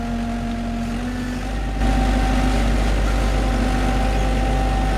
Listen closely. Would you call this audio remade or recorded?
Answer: recorded